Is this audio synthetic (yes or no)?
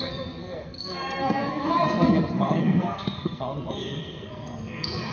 yes